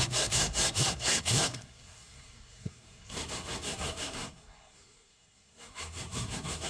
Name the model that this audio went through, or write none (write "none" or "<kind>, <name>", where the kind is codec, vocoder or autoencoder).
codec, SNAC